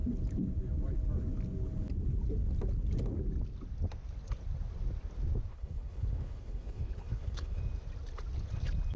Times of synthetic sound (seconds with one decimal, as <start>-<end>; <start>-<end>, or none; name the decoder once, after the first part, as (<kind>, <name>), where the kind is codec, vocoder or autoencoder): 5.5-7.6 (codec, HILCodec)